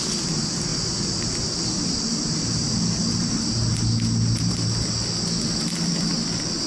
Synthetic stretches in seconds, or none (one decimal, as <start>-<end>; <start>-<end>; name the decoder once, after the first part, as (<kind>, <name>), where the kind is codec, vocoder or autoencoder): none